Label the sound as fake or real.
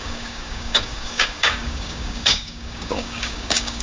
fake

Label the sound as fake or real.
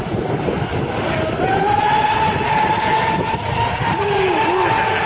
real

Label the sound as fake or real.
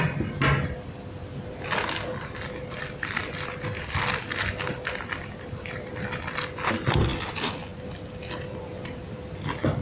real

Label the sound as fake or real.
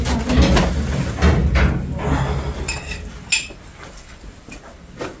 real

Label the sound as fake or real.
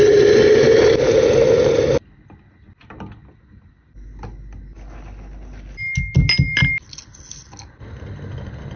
real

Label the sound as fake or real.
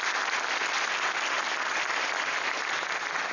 real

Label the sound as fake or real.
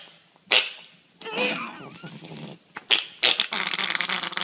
real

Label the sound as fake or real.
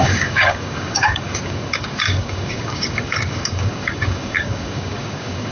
fake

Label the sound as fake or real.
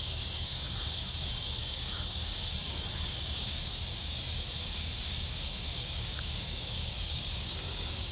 fake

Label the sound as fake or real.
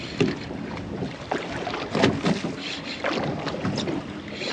real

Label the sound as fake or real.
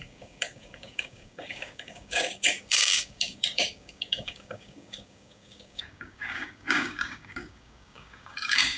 fake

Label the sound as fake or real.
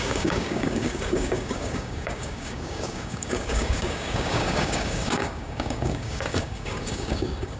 fake